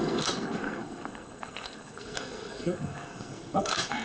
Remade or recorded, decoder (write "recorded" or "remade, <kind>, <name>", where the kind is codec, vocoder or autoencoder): remade, codec, SNAC